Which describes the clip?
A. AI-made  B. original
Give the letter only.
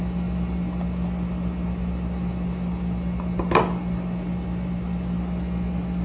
B